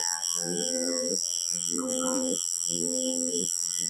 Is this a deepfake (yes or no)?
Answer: yes